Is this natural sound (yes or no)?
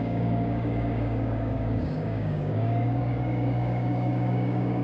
no